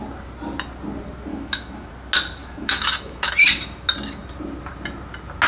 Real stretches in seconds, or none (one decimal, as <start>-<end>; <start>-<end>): 0.0-1.3; 1.9-2.4; 3.3-5.5